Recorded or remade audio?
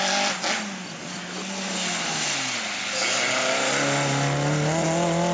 recorded